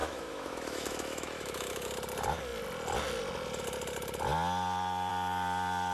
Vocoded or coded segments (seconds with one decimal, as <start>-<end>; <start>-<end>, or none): 0.0-1.9